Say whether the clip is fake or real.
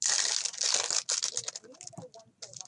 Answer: real